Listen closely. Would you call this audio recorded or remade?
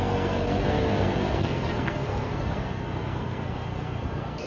remade